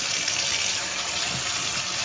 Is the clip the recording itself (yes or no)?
yes